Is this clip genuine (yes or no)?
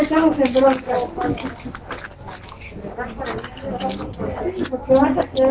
yes